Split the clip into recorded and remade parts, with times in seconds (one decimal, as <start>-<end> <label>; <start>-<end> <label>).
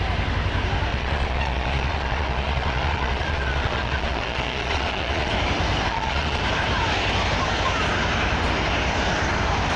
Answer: 0.0-0.9 recorded; 0.9-5.3 remade; 5.3-5.9 recorded; 5.9-6.4 remade; 6.4-9.8 recorded